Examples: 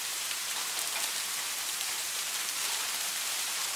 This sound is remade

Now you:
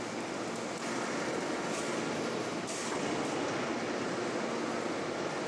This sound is recorded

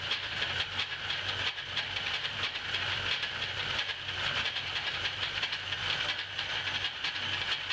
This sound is remade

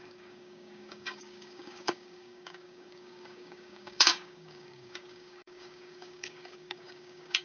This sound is remade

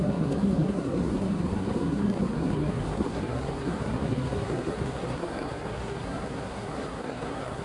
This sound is remade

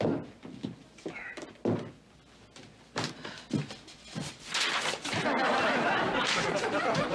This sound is recorded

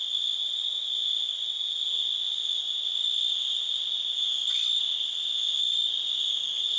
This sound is recorded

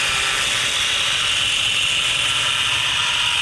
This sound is recorded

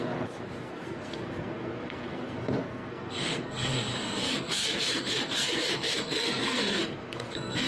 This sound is remade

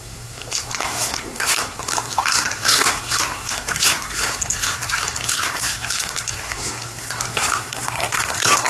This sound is remade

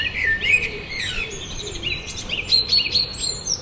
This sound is remade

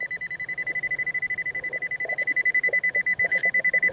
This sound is remade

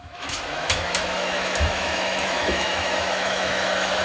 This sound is remade